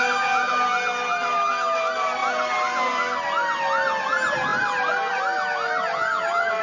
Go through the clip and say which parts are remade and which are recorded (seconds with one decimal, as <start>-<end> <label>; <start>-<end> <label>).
0.0-6.6 recorded